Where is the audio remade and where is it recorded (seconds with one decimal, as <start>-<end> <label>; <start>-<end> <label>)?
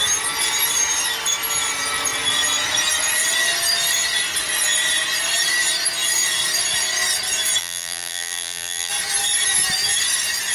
0.0-7.6 recorded; 7.6-8.9 remade; 8.9-10.5 recorded